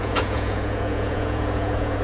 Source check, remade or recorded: remade